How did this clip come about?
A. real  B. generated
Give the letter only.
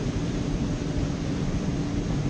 A